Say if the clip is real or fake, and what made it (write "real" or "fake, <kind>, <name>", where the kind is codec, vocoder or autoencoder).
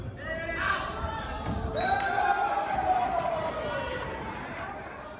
fake, vocoder, BigVGAN v2